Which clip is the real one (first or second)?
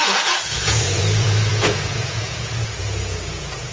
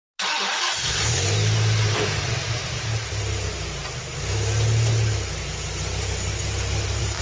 second